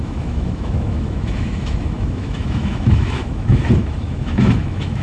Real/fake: fake